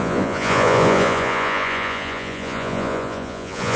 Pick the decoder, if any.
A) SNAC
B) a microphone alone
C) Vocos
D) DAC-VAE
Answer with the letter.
C